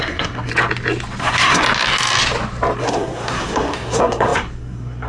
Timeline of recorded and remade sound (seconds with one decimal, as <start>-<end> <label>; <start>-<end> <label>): 0.0-0.5 remade; 0.5-1.2 recorded; 1.2-1.6 remade; 1.6-2.8 recorded; 2.8-5.1 remade